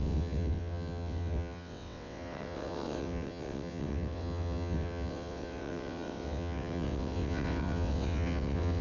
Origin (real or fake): fake